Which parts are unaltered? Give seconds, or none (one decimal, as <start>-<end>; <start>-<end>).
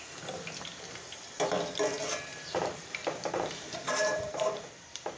0.0-2.3